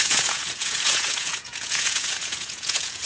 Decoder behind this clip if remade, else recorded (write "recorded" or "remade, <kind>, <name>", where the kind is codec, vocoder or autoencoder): remade, vocoder, Vocos